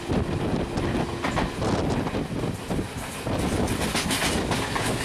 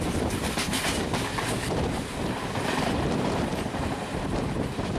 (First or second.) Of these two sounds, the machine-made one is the second